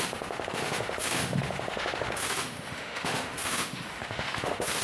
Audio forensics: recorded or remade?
remade